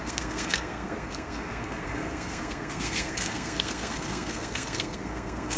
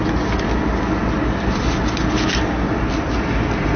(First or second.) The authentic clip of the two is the second